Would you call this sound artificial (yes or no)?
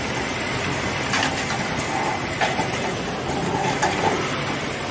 no